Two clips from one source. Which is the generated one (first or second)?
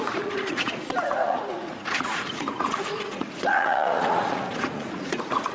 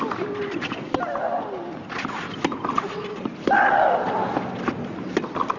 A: first